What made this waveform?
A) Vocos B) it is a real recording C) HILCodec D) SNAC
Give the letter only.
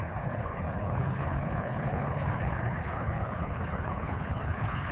C